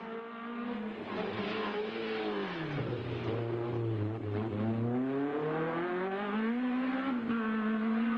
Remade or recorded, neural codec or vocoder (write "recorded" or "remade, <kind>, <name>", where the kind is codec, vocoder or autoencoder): recorded